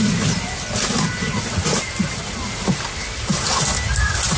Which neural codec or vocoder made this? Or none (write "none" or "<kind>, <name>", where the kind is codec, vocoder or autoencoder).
none